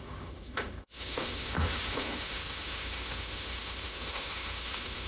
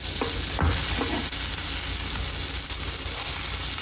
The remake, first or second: first